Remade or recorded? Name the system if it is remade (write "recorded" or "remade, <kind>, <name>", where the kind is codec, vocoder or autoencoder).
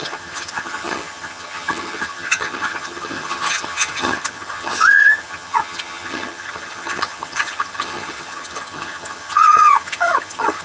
remade, vocoder, HiFi-GAN